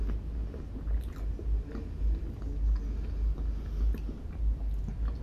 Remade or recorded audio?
recorded